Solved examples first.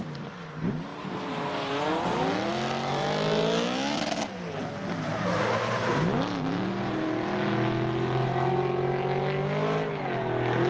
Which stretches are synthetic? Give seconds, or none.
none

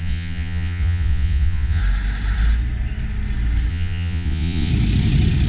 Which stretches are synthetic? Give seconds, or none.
0.0-1.8 (vocoder, Vocos); 3.7-4.7

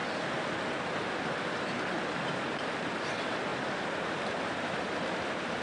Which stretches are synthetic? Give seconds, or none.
0.0-0.6 (vocoder, BigVGAN v2); 3.5-5.0

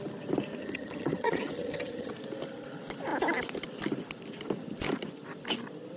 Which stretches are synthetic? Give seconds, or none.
0.6-2.1 (vocoder, HiFi-GAN)

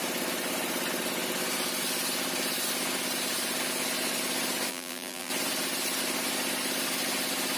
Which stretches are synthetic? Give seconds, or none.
4.7-5.3 (vocoder, BigVGAN v2)

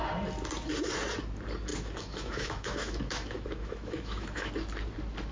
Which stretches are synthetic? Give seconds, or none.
1.7-4.5 (autoencoder, DAC-VAE)

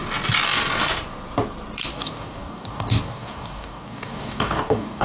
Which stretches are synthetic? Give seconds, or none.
1.9-5.0 (codec, DAC)

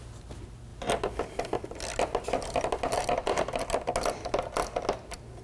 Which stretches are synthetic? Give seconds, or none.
none